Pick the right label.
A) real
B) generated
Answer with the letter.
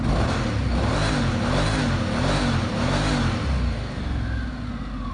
A